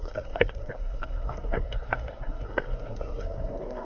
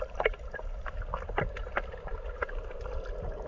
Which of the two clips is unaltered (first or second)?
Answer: second